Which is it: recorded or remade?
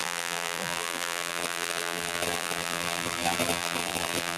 remade